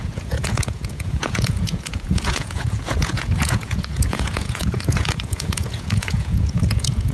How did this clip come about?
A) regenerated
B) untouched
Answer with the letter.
A